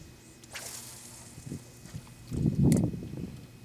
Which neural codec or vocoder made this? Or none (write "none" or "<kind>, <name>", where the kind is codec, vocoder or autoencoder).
none